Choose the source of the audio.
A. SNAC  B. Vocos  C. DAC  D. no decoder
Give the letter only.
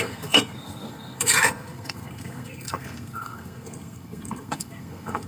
A